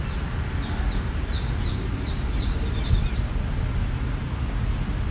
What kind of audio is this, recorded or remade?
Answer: recorded